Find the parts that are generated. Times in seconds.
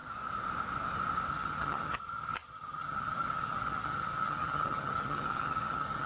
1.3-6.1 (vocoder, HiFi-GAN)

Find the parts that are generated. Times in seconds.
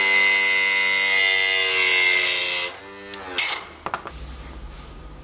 none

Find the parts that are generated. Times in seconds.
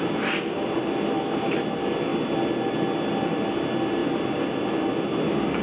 none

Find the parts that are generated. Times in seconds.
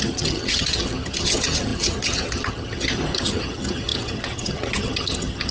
0.0-5.5 (vocoder, HiFi-GAN)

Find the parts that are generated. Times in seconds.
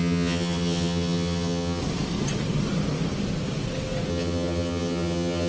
0.0-1.8 (vocoder, HiFi-GAN); 4.1-5.5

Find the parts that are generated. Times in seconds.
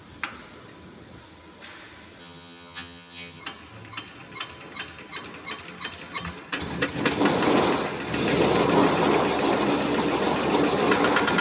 2.2-3.4 (vocoder, HiFi-GAN)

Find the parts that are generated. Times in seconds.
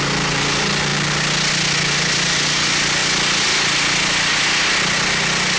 none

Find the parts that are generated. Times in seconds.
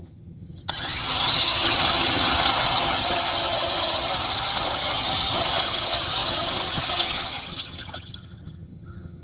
0.0-9.2 (vocoder, HiFi-GAN)